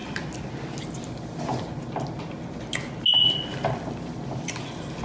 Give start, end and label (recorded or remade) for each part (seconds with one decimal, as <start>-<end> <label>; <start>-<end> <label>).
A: 0.0-3.5 recorded; 3.5-5.0 remade